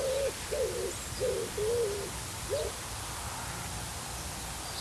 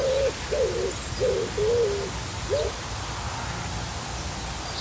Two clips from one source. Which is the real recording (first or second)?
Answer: second